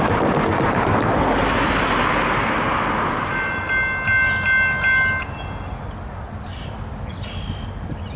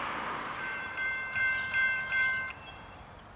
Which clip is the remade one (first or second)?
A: second